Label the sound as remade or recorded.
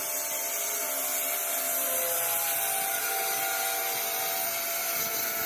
recorded